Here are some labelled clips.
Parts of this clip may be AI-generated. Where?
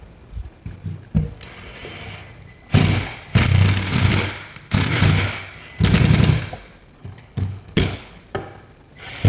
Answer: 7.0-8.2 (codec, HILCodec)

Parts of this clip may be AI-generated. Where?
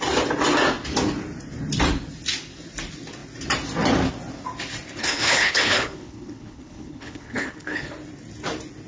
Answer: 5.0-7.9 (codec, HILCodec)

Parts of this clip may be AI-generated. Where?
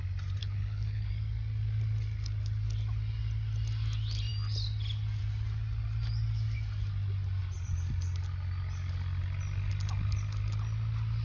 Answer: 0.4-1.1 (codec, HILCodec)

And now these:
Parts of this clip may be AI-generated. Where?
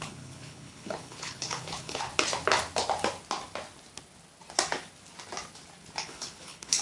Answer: 0.0-2.1 (codec, HILCodec); 6.0-6.8